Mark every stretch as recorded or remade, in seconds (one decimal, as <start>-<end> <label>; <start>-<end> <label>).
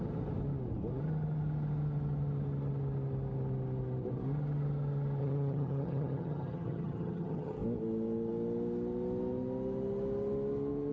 0.0-5.2 recorded; 5.2-7.6 remade; 7.6-10.9 recorded